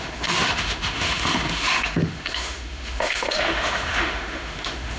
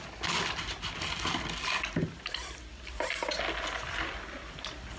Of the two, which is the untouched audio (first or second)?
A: second